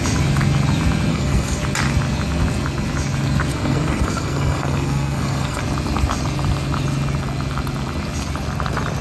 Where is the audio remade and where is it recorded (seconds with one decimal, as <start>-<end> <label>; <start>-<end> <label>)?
0.0-1.1 recorded; 1.1-1.6 remade; 1.6-3.5 recorded; 3.5-5.6 remade; 5.6-9.0 recorded